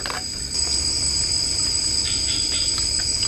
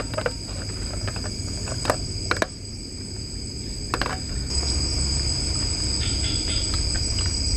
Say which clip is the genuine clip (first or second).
second